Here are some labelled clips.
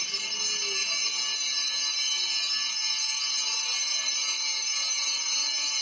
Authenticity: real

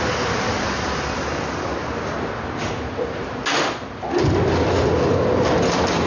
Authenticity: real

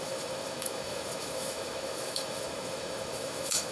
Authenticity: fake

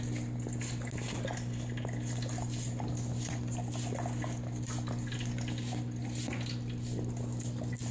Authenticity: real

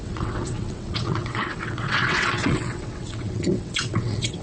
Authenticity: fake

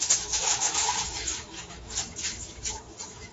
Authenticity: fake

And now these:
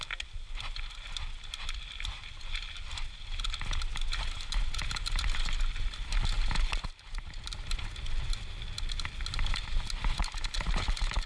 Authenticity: real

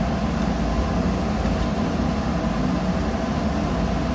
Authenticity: real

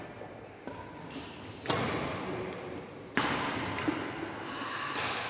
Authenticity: real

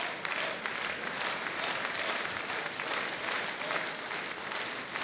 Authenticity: real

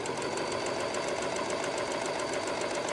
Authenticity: real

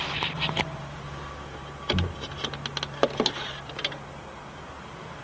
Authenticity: real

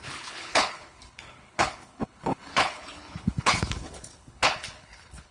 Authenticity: fake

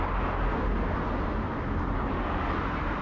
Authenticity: real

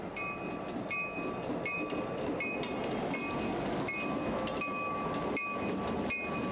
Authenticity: real